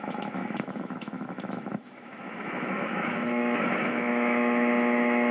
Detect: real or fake fake